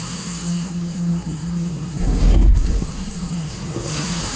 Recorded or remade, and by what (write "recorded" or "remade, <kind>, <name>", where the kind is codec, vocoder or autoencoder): remade, codec, SNAC